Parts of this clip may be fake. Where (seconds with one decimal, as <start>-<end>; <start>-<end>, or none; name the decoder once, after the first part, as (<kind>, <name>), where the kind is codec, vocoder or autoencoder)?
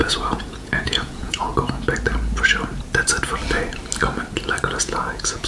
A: 0.0-1.5 (vocoder, Vocos); 4.8-5.5